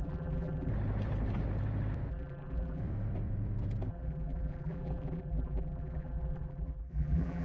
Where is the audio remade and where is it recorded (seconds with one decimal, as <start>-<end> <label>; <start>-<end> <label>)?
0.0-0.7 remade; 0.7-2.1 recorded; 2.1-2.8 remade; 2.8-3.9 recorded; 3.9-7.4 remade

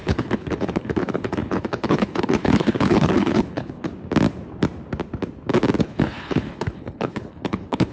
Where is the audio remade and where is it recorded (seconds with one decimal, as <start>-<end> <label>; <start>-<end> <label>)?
0.0-3.9 remade; 3.9-5.8 recorded; 5.8-7.9 remade

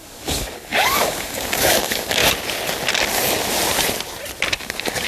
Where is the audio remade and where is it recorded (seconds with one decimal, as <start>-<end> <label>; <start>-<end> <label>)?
0.0-2.2 remade; 2.2-4.6 recorded; 4.6-5.1 remade